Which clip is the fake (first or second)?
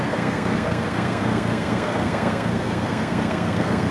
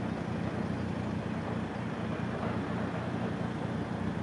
first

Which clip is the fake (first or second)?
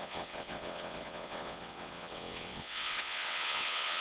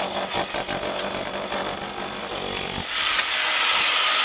first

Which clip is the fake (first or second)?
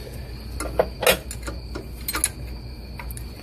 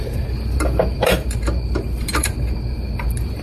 second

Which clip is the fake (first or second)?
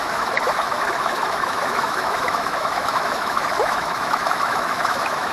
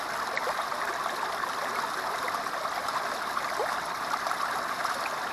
first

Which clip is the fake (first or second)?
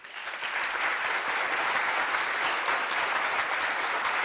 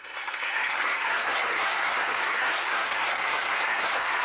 second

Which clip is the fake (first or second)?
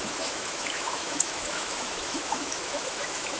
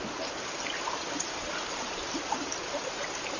first